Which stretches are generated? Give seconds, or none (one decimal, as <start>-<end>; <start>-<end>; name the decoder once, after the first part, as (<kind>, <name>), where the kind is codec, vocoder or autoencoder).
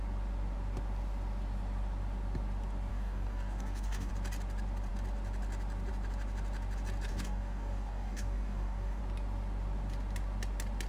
2.9-4.1 (codec, DAC); 7.1-9.0